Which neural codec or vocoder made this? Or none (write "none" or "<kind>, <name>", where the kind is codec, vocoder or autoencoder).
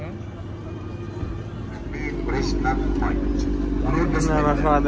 none